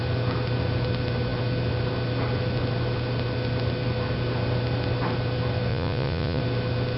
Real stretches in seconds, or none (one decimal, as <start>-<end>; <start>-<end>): 0.0-5.7; 6.4-7.0